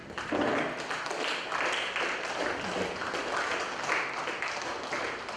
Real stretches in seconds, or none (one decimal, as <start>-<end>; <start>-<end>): 3.2-5.4